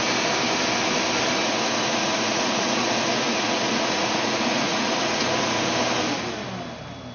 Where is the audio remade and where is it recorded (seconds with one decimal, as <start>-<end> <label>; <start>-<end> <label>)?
0.0-1.4 recorded; 1.4-5.6 remade; 5.6-7.1 recorded